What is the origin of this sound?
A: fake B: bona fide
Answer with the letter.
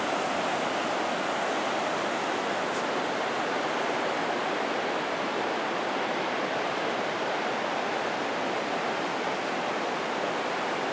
B